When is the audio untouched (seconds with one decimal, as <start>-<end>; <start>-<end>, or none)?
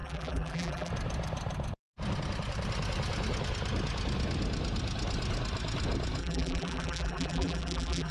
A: 0.9-6.2